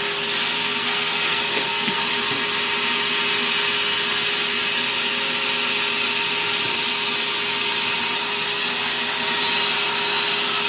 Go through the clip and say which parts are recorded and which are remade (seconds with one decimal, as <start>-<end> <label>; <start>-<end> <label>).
0.0-0.6 recorded; 0.6-2.0 remade; 2.0-10.7 recorded